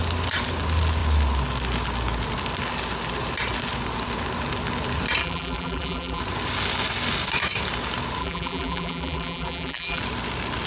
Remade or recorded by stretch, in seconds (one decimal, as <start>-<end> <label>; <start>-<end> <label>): 0.0-5.2 recorded; 5.2-6.2 remade; 6.2-8.2 recorded; 8.2-10.0 remade; 10.0-10.7 recorded